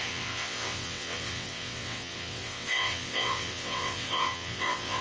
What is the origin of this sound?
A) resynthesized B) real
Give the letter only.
A